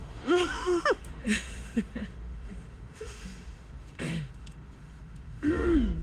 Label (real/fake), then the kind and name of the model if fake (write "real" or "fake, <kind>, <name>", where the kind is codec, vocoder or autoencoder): fake, autoencoder, DAC-VAE